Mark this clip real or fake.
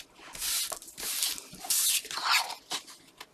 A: real